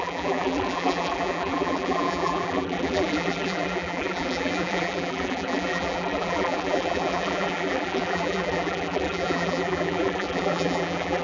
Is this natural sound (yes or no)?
no